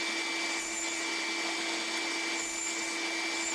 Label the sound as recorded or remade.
recorded